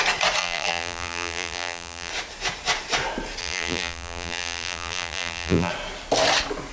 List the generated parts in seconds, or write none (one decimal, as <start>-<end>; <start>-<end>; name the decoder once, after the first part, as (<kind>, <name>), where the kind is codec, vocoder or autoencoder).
0.4-2.1 (vocoder, BigVGAN v2); 3.4-5.7